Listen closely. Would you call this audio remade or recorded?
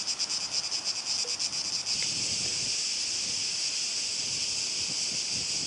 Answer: recorded